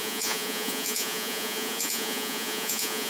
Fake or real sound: fake